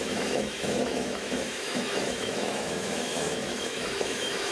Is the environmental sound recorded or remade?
remade